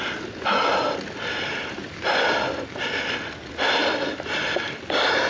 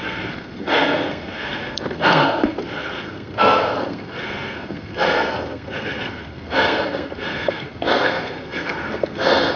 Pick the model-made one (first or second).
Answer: second